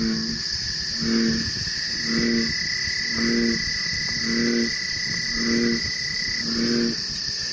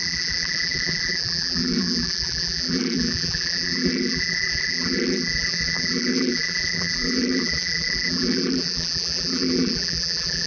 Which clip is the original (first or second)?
first